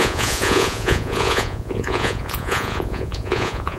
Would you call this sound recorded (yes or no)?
no